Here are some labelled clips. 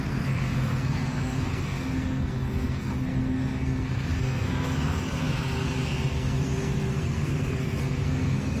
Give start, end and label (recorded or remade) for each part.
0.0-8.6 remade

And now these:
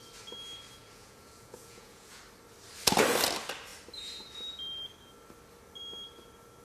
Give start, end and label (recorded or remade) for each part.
0.0-0.8 recorded; 0.8-2.2 remade; 2.2-6.6 recorded

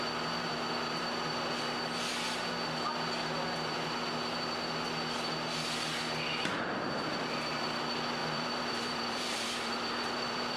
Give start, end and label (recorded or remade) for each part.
0.0-8.2 recorded; 8.2-10.6 remade

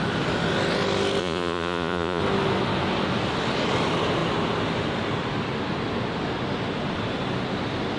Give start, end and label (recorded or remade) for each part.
0.0-1.2 recorded; 1.2-2.2 remade; 2.2-8.0 recorded